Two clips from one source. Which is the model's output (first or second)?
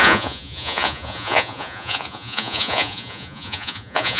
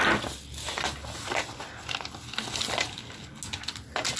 first